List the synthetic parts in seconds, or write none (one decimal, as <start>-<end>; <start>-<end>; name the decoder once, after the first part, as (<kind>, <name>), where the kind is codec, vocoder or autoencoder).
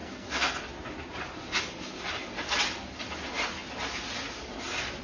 0.0-0.6 (codec, SNAC)